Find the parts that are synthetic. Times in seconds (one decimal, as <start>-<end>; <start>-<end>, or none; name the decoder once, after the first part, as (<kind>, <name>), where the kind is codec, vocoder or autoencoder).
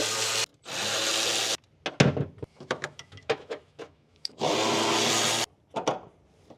2.5-4.5 (autoencoder, DAC-VAE)